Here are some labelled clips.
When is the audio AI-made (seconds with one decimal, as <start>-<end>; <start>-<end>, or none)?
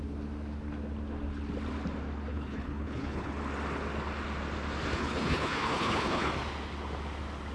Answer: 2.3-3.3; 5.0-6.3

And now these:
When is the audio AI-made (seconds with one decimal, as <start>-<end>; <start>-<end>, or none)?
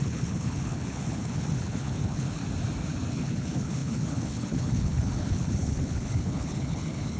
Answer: 0.0-2.4; 3.1-7.2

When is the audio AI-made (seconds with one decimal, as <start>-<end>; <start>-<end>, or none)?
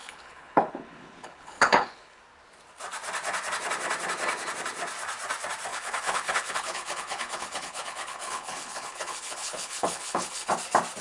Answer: 0.0-2.2; 5.7-10.5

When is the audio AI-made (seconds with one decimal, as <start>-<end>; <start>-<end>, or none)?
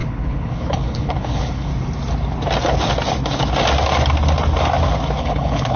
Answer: 0.0-1.7; 5.2-5.8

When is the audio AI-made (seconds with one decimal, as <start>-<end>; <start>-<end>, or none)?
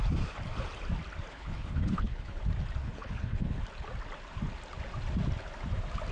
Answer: 1.3-2.4; 2.8-3.6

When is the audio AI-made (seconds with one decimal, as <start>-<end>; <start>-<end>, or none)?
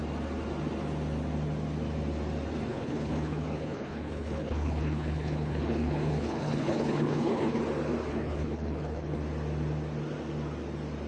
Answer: 2.7-7.6; 8.1-9.2